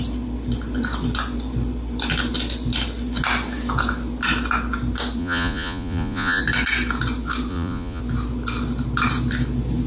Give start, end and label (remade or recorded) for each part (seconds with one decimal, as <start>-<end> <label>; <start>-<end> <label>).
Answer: 0.0-5.2 recorded; 5.2-6.4 remade; 6.4-7.5 recorded; 7.5-8.0 remade; 8.0-9.9 recorded